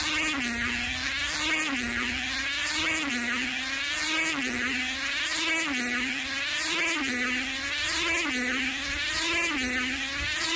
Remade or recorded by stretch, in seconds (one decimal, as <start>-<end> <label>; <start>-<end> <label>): 0.0-10.6 recorded